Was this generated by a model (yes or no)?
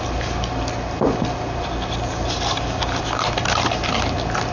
no